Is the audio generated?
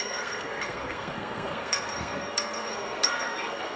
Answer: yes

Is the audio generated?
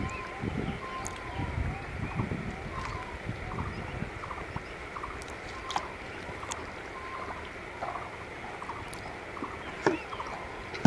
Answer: no